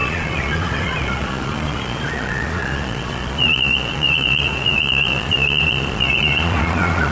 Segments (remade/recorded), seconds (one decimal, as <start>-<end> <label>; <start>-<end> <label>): 0.0-7.1 remade